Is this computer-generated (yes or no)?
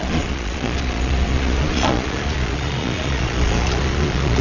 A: yes